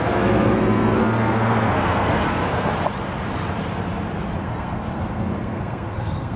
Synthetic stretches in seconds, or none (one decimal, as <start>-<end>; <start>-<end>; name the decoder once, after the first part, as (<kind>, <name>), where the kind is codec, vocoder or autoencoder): 0.0-2.7 (codec, SNAC); 4.4-6.4

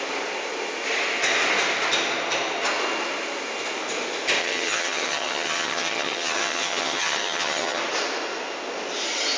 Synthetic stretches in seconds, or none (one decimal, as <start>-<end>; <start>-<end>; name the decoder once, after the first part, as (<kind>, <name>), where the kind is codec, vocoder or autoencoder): 4.4-7.8 (vocoder, HiFi-GAN)

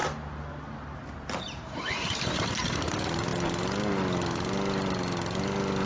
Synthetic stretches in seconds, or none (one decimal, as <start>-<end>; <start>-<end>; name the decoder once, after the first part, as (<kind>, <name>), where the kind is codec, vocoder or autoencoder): 1.4-3.3 (vocoder, BigVGAN v2)

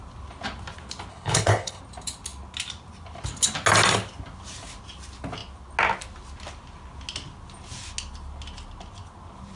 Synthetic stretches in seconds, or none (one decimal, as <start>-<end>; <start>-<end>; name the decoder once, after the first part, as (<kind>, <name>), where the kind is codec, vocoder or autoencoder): 1.1-1.8 (codec, HILCodec)

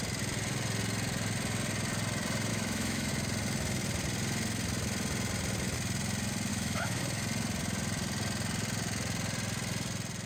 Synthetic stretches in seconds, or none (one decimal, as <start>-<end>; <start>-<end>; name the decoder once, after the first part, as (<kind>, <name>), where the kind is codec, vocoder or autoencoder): 2.5-3.1 (autoencoder, DAC-VAE); 6.5-7.0

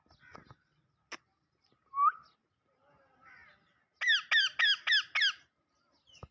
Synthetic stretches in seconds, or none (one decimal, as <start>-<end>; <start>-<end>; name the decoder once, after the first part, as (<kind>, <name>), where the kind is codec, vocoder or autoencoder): none